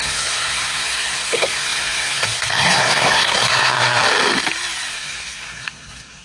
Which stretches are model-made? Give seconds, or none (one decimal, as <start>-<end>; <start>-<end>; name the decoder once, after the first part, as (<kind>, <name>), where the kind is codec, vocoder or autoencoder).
0.0-4.0 (codec, SNAC); 4.9-6.2